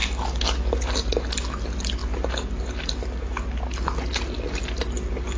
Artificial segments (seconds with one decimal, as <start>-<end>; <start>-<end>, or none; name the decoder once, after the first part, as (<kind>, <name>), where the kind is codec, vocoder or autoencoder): none